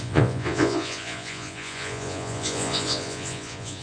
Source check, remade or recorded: remade